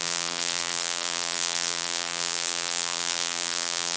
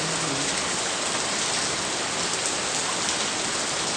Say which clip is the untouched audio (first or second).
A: second